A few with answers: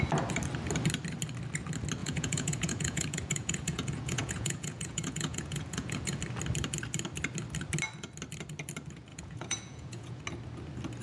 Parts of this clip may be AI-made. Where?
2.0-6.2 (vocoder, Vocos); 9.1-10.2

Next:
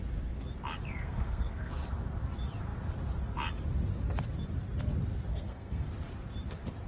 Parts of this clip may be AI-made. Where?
0.9-1.7 (codec, SNAC); 5.3-5.9

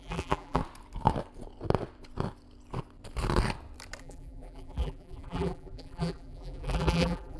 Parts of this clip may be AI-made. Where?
0.0-0.6 (vocoder, BigVGAN v2); 4.0-7.4

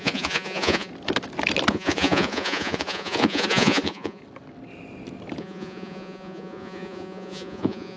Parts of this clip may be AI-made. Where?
0.0-0.9 (vocoder, Vocos); 1.7-4.2; 5.4-8.0

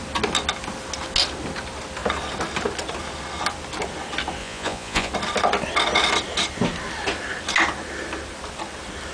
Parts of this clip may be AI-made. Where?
4.4-5.1 (vocoder, Vocos)

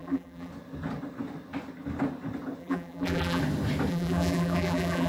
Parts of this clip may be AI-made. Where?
0.0-0.5 (vocoder, BigVGAN v2); 2.6-3.4; 3.9-5.1